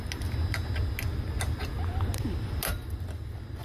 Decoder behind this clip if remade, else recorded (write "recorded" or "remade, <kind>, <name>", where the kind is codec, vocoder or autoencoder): recorded